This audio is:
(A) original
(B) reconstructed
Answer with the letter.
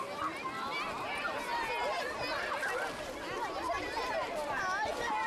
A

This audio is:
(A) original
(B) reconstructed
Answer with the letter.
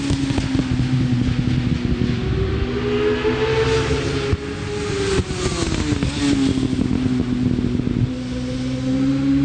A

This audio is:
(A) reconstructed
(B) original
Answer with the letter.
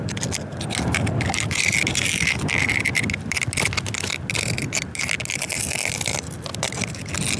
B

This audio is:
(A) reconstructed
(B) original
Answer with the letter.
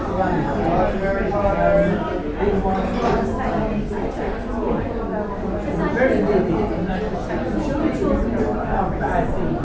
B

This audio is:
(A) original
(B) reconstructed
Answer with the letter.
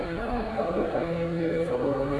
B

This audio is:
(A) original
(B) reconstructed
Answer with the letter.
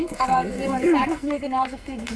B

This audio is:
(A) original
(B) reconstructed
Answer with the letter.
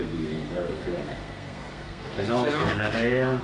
B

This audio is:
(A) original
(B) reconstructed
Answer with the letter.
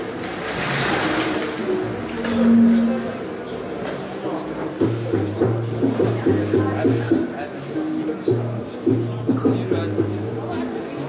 A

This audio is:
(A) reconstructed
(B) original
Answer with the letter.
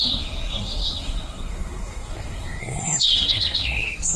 A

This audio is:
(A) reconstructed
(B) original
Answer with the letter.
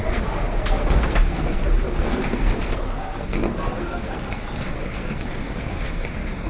A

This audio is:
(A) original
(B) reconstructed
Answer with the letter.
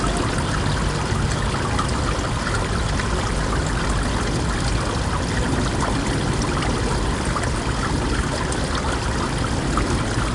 A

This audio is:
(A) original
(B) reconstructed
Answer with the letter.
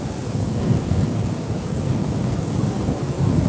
B